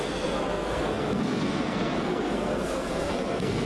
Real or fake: fake